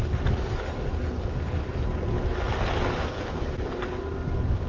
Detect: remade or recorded recorded